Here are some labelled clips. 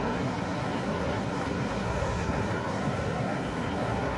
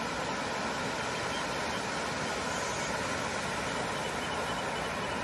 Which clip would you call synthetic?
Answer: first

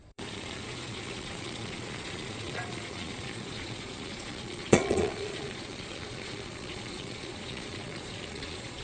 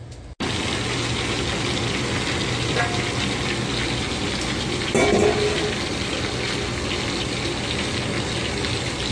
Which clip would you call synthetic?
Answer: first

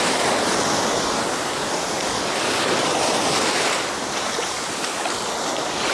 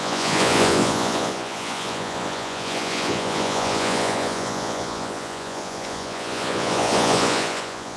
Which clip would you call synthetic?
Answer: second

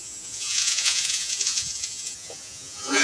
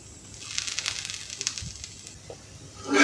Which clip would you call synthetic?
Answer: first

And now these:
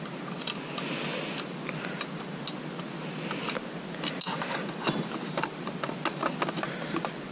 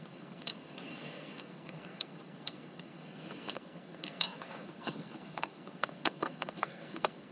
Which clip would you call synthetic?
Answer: second